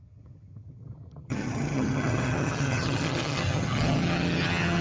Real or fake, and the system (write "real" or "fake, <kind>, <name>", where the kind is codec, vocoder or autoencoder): fake, vocoder, HiFi-GAN